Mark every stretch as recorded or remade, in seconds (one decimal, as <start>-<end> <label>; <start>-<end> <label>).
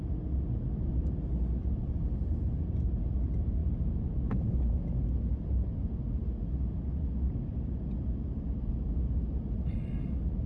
0.0-10.5 recorded